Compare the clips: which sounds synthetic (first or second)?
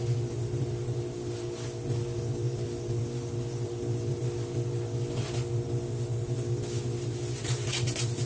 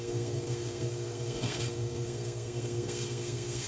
second